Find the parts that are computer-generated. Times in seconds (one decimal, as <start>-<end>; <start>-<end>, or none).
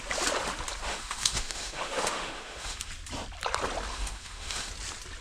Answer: 0.9-2.9; 3.9-4.7